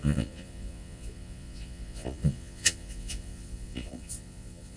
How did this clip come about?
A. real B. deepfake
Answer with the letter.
B